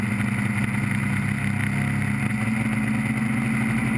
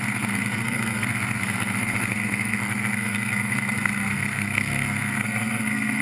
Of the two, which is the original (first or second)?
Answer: first